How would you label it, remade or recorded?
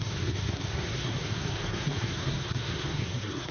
remade